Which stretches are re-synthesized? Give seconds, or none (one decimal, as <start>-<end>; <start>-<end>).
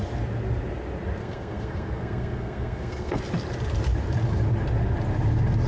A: 1.2-3.2